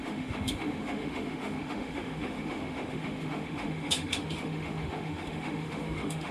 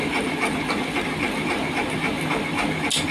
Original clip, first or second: second